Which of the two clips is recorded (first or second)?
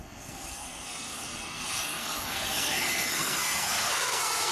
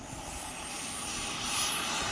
second